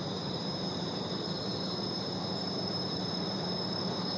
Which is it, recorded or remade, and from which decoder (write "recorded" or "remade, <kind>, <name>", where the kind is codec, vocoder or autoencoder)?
remade, vocoder, BigVGAN v2